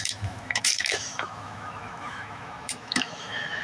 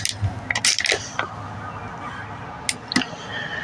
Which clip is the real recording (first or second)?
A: second